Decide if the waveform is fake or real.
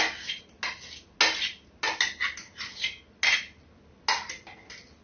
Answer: real